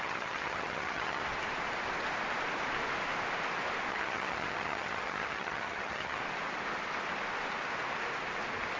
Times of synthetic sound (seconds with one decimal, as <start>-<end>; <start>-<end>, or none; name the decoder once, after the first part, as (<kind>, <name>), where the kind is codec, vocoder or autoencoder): 0.0-1.2 (vocoder, HiFi-GAN); 3.9-6.2